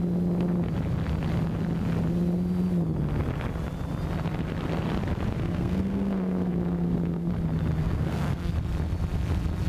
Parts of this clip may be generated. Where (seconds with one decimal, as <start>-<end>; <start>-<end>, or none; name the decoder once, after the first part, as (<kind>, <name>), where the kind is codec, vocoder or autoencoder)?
5.4-7.3 (codec, SNAC); 7.8-8.5